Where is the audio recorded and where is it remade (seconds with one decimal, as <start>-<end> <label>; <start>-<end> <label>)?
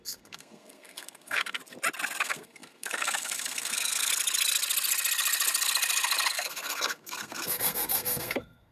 0.0-1.6 remade; 1.6-2.2 recorded; 2.2-4.1 remade; 4.1-6.3 recorded; 6.3-8.7 remade